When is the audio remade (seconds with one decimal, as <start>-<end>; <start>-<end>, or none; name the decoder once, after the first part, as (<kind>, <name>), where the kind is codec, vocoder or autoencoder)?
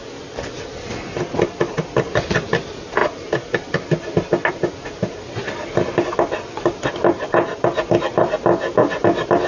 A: none